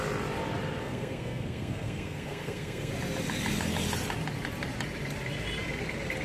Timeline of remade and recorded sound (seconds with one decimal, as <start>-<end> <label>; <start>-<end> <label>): 0.0-0.8 recorded; 0.8-2.9 remade; 2.9-6.2 recorded